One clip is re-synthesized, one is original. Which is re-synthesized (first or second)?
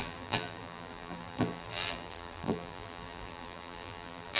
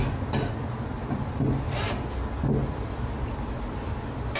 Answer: first